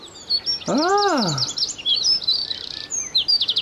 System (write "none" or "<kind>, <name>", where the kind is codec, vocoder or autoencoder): none